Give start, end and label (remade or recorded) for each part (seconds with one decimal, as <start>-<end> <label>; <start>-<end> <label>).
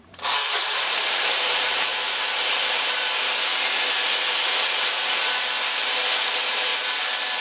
0.0-1.9 remade; 1.9-6.3 recorded; 6.3-6.7 remade; 6.7-7.4 recorded